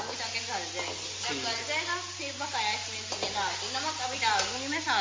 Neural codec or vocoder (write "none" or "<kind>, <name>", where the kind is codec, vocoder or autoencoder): none